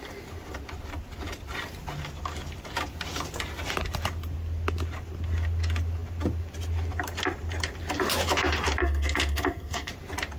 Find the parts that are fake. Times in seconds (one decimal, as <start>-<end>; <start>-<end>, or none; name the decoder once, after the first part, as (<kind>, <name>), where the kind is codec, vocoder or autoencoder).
8.8-9.9 (codec, SNAC)